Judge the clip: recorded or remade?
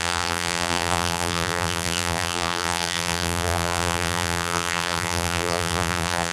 remade